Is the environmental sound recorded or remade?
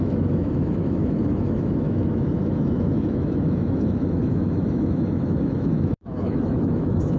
remade